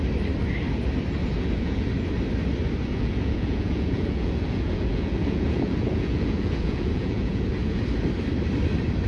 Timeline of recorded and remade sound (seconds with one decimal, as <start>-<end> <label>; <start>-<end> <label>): 0.0-1.2 recorded; 1.2-1.9 remade; 1.9-2.9 recorded; 2.9-7.8 remade; 7.8-9.1 recorded